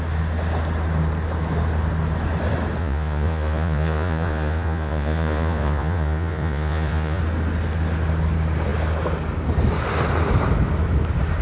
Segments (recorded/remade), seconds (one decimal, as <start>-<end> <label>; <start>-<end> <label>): 0.0-2.8 recorded; 2.8-7.2 remade; 7.2-11.4 recorded